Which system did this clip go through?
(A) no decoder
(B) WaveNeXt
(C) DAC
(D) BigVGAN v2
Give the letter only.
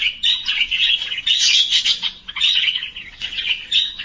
B